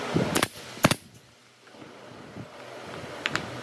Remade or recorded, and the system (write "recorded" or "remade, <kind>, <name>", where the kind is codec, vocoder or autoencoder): recorded